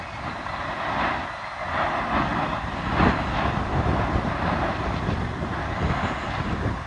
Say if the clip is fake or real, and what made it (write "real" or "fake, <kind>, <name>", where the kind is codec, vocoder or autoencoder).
real